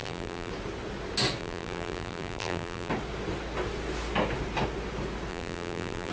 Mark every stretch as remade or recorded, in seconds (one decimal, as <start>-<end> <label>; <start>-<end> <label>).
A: 0.0-0.5 remade; 0.5-1.4 recorded; 1.4-2.9 remade; 2.9-5.3 recorded; 5.3-6.1 remade